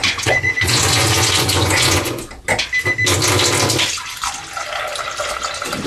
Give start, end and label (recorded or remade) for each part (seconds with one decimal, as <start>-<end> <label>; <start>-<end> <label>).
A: 0.0-2.3 remade; 2.3-5.9 recorded